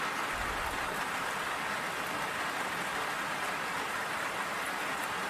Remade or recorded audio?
recorded